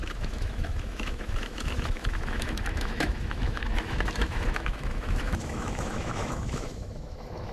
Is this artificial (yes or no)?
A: yes